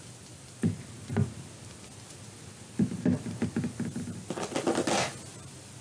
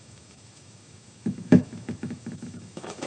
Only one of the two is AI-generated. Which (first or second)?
second